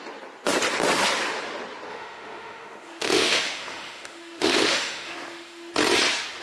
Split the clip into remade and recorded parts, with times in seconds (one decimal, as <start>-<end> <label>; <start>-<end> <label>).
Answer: 0.0-1.9 recorded; 1.9-5.7 remade; 5.7-6.4 recorded